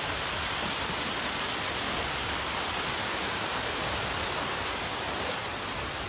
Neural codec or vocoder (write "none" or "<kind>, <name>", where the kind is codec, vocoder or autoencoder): none